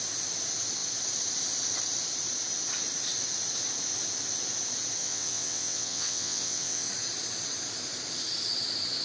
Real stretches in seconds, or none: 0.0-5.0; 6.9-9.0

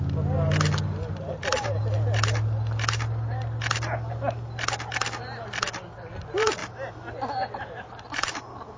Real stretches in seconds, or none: 0.0-8.8